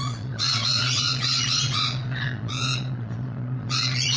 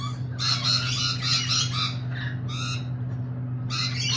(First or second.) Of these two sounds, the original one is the second